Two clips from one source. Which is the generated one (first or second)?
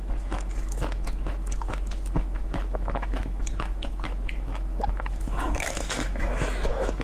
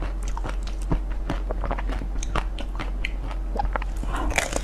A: first